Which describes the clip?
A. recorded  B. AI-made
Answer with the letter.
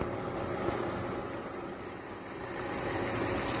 A